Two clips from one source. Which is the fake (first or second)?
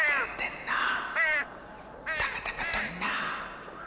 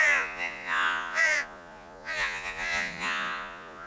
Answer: second